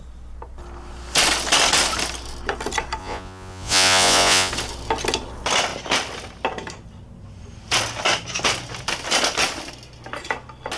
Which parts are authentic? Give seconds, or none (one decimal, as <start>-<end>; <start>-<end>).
0.0-3.0; 4.5-10.8